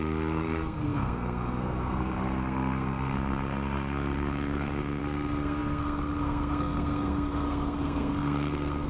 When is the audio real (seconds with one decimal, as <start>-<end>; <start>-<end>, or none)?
none